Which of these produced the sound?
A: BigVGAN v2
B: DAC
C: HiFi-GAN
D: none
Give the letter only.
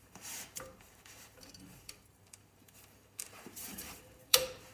A